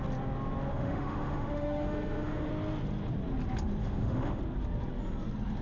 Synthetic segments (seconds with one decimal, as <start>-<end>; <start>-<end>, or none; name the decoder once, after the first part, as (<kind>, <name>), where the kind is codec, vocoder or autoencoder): 0.7-2.5 (autoencoder, DAC-VAE); 3.8-4.4